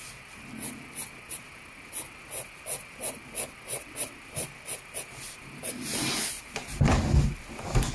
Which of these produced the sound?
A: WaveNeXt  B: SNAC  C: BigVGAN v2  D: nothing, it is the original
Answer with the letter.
D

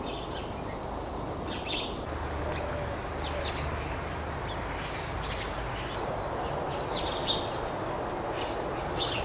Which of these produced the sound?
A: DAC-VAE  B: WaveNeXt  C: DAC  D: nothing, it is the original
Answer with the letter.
D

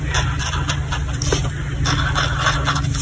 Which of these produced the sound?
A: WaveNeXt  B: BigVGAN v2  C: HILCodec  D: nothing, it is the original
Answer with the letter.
D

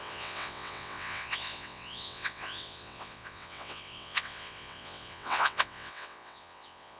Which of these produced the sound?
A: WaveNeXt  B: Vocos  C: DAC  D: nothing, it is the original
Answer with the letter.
A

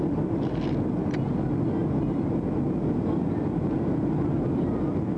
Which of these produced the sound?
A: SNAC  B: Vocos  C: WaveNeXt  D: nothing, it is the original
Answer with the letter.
D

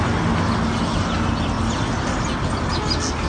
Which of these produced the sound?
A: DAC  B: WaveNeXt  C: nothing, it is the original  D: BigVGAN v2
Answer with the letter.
C